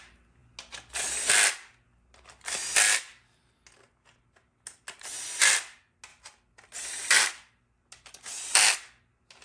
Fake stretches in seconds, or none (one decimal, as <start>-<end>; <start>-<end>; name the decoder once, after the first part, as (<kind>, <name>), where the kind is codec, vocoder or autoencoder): 6.1-6.9 (vocoder, BigVGAN v2)